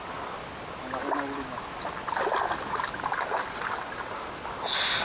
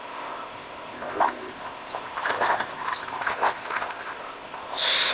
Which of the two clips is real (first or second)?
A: first